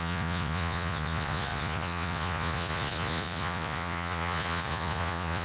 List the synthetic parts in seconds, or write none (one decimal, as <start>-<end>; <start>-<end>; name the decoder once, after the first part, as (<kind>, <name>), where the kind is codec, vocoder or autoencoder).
0.0-5.4 (vocoder, Vocos)